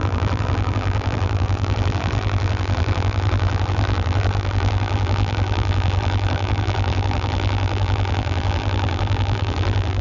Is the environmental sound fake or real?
fake